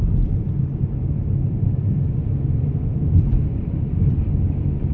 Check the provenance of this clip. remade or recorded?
remade